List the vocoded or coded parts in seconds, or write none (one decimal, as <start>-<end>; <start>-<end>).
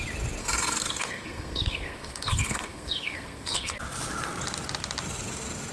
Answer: 0.4-3.8